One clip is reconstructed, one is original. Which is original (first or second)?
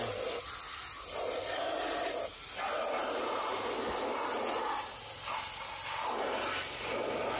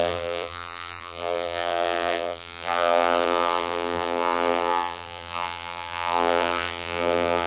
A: first